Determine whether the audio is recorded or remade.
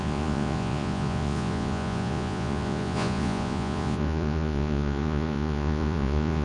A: remade